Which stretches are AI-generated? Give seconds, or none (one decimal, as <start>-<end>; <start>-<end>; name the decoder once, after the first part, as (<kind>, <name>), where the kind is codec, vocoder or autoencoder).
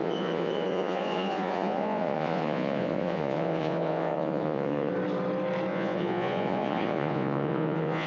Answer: 0.0-4.9 (vocoder, Vocos); 5.7-8.1